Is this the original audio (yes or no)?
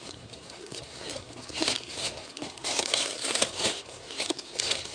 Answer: no